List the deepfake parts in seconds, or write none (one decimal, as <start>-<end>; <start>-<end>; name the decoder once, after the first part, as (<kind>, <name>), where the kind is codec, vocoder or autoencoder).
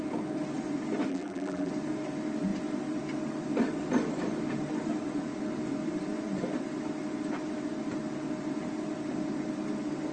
1.1-1.7 (vocoder, BigVGAN v2)